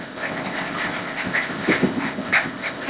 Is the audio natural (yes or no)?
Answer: no